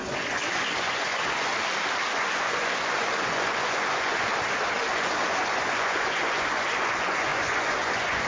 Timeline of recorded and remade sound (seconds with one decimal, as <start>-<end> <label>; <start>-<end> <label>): 0.0-1.5 remade; 1.5-2.1 recorded; 2.1-4.3 remade; 4.3-4.9 recorded; 4.9-8.3 remade